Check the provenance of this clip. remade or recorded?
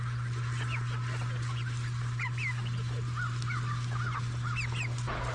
recorded